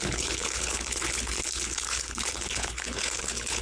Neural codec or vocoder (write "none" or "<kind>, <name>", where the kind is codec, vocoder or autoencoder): codec, HILCodec